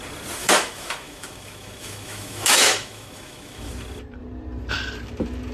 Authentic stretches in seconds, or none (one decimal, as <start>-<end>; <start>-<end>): 0.0-0.4; 3.7-5.5

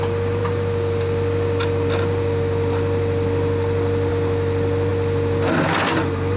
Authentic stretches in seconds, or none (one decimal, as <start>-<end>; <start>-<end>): 0.0-6.4

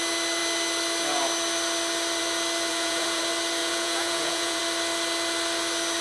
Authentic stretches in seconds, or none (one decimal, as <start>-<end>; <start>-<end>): 0.0-2.7; 3.2-3.6; 4.6-6.0